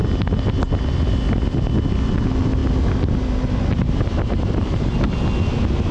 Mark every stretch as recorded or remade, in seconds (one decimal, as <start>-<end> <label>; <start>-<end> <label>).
0.0-5.9 recorded